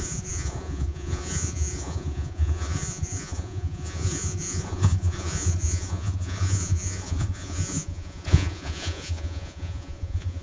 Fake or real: fake